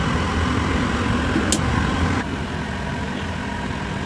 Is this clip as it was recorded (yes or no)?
yes